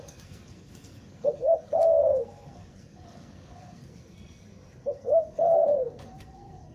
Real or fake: fake